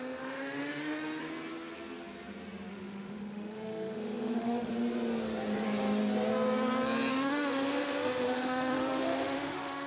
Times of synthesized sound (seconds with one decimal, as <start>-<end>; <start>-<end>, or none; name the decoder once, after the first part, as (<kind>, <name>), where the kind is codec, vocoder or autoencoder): 0.0-1.2 (autoencoder, DAC-VAE); 2.7-4.7; 7.1-9.9